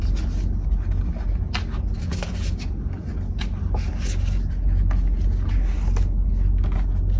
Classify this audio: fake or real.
real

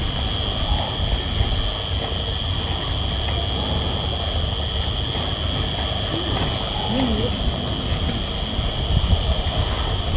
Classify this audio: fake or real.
real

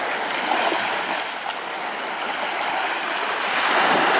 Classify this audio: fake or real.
real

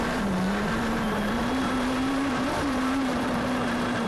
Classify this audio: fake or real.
fake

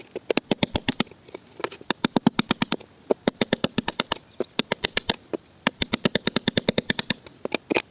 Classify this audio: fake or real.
real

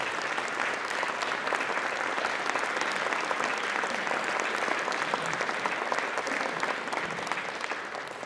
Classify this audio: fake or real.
real